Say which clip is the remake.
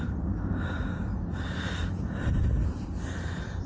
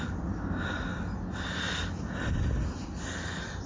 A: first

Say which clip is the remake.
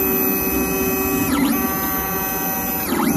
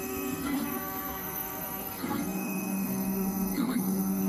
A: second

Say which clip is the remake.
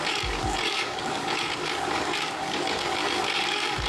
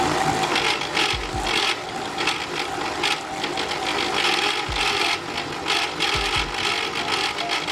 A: first